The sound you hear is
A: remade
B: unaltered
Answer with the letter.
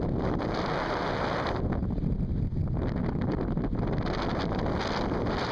B